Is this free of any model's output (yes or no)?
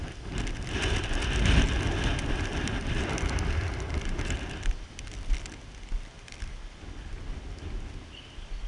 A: yes